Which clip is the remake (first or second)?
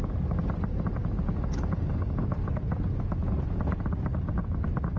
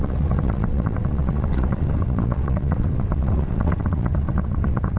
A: second